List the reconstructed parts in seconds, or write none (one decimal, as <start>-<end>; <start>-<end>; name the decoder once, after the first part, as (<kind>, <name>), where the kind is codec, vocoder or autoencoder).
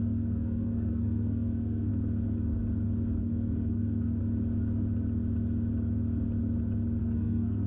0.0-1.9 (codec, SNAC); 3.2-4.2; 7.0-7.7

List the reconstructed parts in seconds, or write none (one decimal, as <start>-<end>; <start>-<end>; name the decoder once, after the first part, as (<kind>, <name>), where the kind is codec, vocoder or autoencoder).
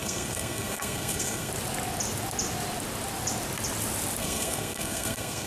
0.0-1.5 (codec, SNAC); 4.2-5.5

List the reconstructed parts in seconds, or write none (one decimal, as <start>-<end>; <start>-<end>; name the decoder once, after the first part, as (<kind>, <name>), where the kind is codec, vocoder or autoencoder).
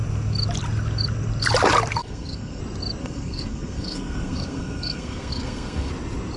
2.0-2.6 (codec, SNAC); 3.0-5.9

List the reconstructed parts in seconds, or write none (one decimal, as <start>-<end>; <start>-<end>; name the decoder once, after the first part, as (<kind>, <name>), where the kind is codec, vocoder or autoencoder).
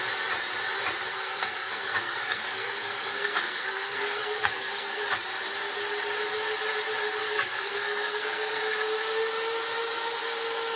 1.1-5.0 (codec, SNAC); 7.2-8.6